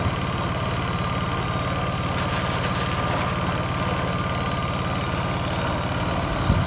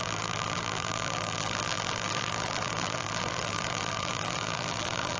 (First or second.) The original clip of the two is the first